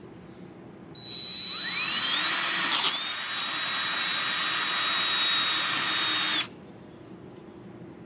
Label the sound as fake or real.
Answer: real